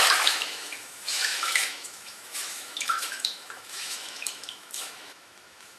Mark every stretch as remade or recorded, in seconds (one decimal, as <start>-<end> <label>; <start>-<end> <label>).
0.0-5.8 remade